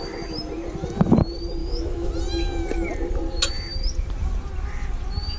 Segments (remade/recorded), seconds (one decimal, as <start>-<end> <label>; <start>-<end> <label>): 0.0-1.6 recorded; 1.6-2.1 remade; 2.1-5.4 recorded